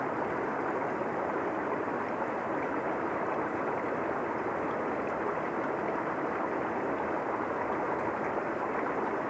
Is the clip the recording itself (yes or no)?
yes